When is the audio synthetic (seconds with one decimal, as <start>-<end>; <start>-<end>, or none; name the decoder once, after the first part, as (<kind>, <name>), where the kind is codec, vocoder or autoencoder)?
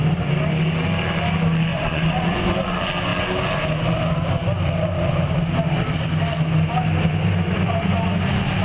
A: 1.7-2.6 (vocoder, Vocos)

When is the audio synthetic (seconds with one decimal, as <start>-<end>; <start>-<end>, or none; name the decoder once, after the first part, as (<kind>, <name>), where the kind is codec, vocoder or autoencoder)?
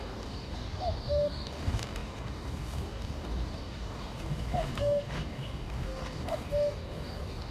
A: 0.0-7.5 (codec, DAC)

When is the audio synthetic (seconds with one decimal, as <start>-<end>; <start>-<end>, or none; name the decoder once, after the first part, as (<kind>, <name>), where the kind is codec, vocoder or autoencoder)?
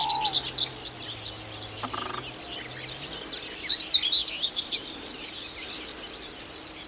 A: none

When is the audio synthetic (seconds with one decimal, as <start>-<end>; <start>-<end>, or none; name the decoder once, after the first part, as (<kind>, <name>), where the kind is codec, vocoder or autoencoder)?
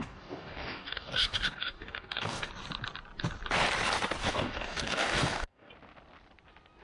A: 0.0-2.5 (codec, DAC); 4.2-5.7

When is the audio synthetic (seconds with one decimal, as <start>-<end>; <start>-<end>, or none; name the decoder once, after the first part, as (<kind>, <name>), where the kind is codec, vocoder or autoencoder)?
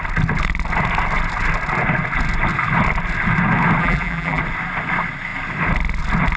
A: 3.8-4.4 (vocoder, BigVGAN v2)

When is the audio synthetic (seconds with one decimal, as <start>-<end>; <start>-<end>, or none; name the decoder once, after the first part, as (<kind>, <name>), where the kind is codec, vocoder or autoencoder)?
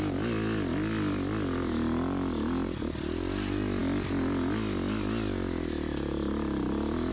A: none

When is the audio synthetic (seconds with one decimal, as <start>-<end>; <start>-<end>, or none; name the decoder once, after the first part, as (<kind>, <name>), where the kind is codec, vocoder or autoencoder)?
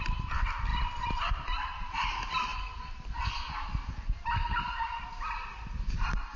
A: none